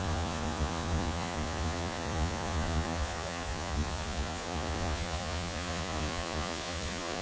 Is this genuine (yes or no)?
no